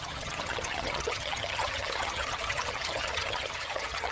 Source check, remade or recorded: remade